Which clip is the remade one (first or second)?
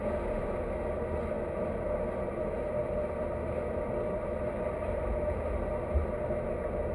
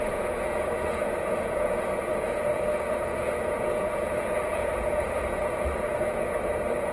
second